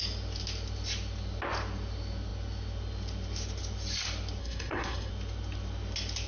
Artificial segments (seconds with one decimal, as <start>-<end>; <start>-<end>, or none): 4.4-5.1

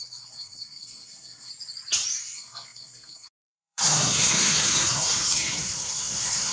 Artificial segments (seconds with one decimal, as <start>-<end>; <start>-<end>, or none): 0.0-1.5; 2.2-6.5

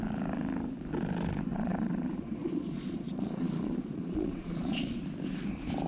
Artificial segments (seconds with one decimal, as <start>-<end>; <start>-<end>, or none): 1.5-5.0

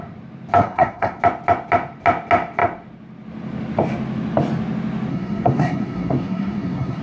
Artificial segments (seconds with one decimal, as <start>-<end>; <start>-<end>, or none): 0.6-1.2; 5.1-7.0

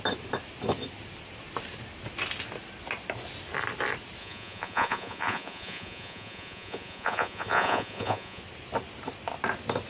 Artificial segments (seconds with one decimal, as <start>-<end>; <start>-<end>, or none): 4.2-8.4

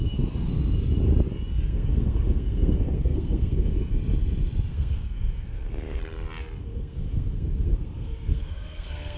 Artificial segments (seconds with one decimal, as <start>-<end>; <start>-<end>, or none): 1.7-3.9; 4.7-6.0; 6.6-9.2

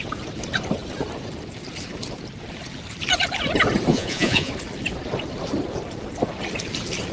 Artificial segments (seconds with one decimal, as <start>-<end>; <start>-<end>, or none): 3.9-4.5